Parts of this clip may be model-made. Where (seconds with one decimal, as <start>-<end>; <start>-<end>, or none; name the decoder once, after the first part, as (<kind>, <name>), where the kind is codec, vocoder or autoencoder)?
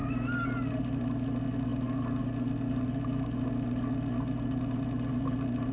none